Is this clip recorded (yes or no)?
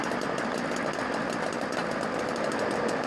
yes